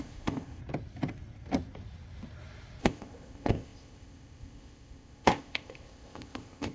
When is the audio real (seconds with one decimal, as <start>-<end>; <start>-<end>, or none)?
0.6-2.8

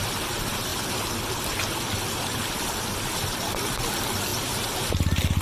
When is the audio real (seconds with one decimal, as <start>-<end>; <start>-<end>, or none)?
0.0-5.4

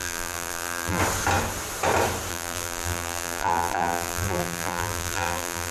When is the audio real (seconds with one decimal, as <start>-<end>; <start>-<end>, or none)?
1.0-2.3

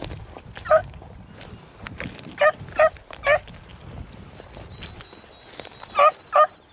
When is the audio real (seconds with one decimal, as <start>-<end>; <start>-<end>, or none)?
0.0-6.7

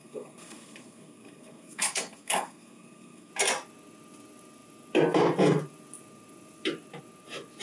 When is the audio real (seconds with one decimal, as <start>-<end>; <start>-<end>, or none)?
3.3-7.6

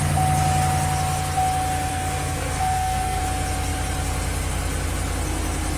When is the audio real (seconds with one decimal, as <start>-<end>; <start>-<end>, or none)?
0.0-1.9; 3.2-5.8

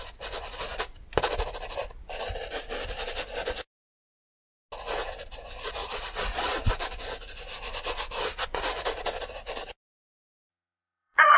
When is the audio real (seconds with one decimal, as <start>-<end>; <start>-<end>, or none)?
0.0-5.8; 6.7-10.5